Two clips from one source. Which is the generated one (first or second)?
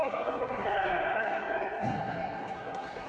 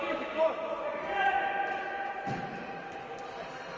first